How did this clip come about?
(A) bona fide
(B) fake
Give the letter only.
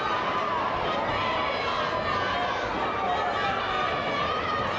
A